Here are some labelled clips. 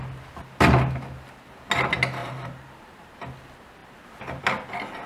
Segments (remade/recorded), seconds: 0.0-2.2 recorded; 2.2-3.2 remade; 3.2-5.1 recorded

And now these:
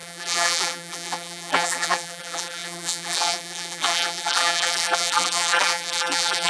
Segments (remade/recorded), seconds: 0.0-6.5 remade

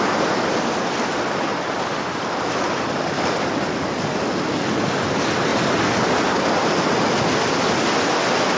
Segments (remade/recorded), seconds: 0.0-1.5 recorded; 1.5-2.2 remade; 2.2-8.6 recorded

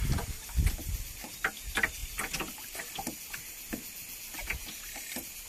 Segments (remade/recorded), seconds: 0.0-5.5 recorded

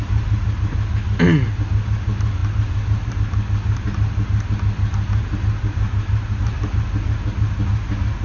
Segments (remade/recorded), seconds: 0.0-8.2 recorded

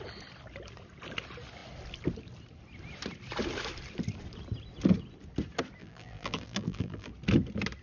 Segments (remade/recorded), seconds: 0.0-5.8 recorded; 5.8-7.1 remade; 7.1-7.8 recorded

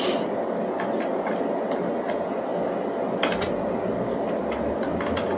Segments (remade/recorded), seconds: 0.0-5.4 recorded